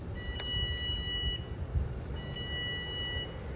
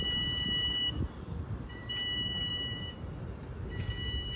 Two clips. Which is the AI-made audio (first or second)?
second